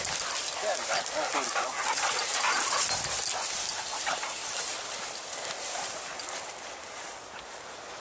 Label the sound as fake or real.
real